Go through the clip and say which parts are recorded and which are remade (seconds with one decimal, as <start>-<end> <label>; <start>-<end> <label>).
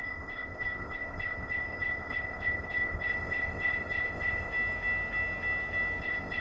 0.0-4.5 remade; 4.5-6.0 recorded; 6.0-6.4 remade